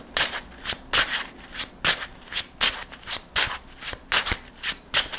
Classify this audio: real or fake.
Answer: real